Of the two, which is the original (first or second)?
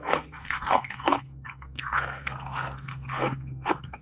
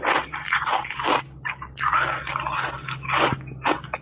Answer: second